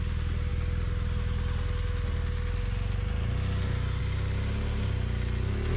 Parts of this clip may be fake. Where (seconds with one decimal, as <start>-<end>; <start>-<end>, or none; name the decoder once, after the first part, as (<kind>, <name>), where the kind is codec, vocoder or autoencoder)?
none